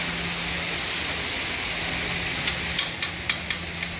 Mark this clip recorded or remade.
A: recorded